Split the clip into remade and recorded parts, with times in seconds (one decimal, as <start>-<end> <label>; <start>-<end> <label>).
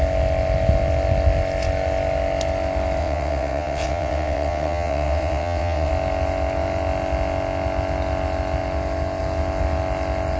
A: 0.0-3.0 recorded; 3.0-5.9 remade; 5.9-10.4 recorded